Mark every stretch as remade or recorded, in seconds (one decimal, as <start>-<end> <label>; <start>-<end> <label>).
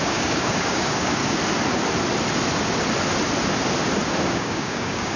0.0-1.2 remade; 1.2-4.3 recorded; 4.3-5.2 remade